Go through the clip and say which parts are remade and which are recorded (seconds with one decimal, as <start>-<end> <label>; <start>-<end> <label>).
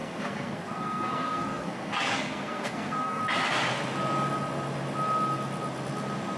0.0-3.2 remade; 3.2-6.4 recorded